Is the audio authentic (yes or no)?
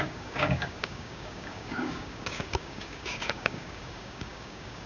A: no